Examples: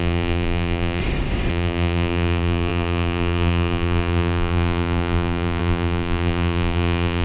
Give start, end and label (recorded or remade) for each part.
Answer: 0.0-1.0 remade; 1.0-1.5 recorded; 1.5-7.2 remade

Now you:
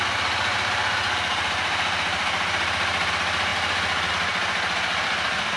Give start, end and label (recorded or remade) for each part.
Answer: 0.0-0.5 recorded; 0.5-3.1 remade; 3.1-3.5 recorded; 3.5-4.1 remade; 4.1-5.6 recorded

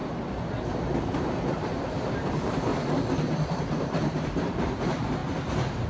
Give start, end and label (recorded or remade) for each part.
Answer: 0.0-1.5 recorded; 1.5-2.7 remade; 2.7-3.5 recorded; 3.5-5.2 remade; 5.2-5.9 recorded

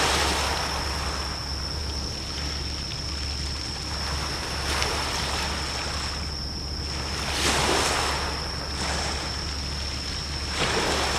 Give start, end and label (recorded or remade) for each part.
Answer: 0.0-11.2 recorded

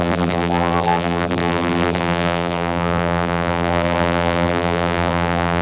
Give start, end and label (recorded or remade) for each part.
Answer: 0.0-5.6 remade

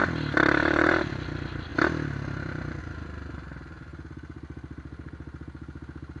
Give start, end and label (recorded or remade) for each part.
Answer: 0.0-0.6 recorded; 0.6-1.1 remade; 1.1-6.2 recorded

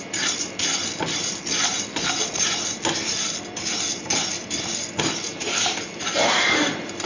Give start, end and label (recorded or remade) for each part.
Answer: 0.0-0.7 remade; 0.7-5.0 recorded; 5.0-7.1 remade